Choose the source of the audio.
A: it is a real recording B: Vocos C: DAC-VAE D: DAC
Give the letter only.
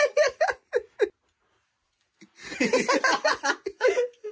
A